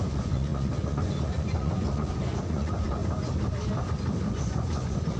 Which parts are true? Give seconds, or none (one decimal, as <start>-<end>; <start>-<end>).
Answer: 3.0-4.3